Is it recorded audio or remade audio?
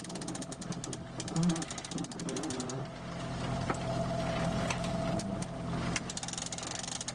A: recorded